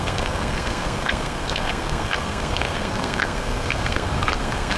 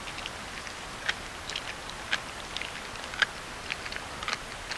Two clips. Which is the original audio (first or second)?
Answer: second